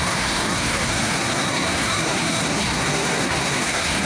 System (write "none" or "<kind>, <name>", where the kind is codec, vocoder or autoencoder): codec, SNAC